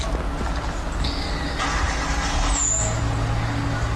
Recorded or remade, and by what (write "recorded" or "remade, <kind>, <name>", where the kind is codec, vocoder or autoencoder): recorded